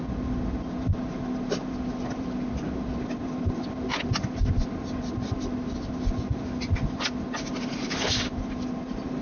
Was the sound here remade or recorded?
recorded